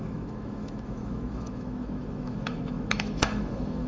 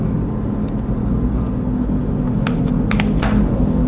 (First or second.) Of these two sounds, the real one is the second